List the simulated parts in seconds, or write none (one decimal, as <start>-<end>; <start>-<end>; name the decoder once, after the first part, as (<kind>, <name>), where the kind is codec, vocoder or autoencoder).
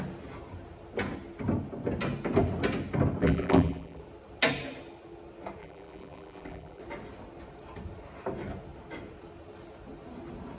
3.2-4.0 (vocoder, BigVGAN v2); 5.6-6.8